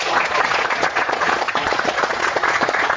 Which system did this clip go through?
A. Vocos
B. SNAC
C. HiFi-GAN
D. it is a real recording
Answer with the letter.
A